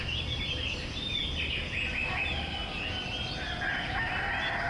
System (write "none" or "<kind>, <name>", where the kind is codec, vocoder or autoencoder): none